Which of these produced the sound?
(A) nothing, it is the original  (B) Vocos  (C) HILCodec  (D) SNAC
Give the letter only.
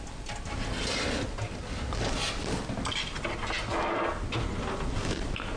A